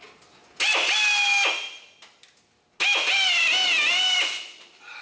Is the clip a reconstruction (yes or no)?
no